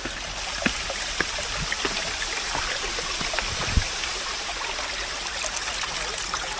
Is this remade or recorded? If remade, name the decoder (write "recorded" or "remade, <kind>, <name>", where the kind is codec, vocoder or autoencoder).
recorded